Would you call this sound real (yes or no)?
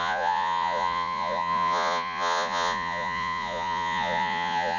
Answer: no